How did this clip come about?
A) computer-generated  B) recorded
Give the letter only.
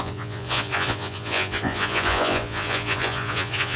A